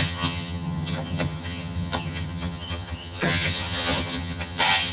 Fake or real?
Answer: fake